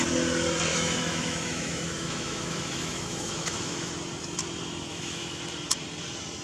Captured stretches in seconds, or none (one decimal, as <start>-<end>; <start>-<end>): 0.0-0.7; 3.9-4.9; 5.4-6.4